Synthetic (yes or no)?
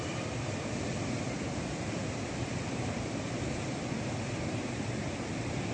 yes